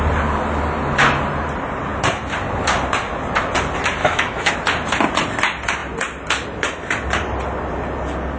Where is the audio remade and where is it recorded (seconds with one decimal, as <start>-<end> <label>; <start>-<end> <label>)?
0.0-4.0 recorded; 4.0-4.5 remade; 4.5-8.4 recorded